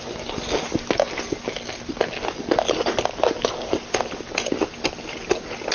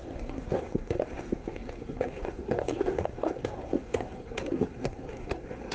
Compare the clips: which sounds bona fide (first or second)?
first